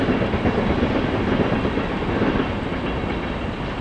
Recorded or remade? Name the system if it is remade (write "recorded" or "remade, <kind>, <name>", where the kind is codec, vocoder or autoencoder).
recorded